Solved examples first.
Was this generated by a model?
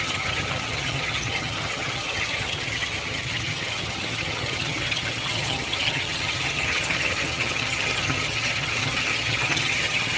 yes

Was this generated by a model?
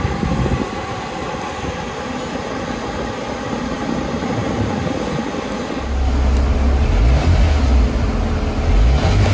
no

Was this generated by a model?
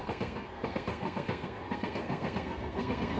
yes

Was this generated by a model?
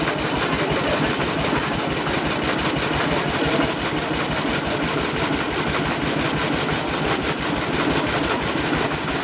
no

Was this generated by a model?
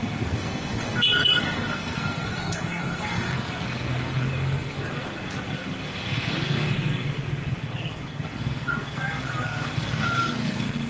yes